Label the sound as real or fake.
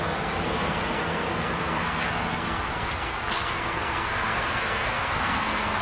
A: fake